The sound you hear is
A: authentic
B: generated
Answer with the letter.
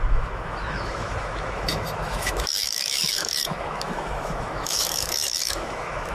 B